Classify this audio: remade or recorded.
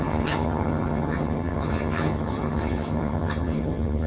remade